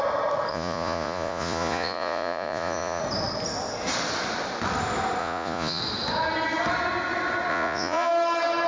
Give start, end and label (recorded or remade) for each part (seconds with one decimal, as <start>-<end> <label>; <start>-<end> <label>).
0.0-0.5 recorded; 0.5-3.0 remade; 3.0-5.2 recorded; 5.2-5.8 remade; 5.8-7.5 recorded; 7.5-8.1 remade; 8.1-8.7 recorded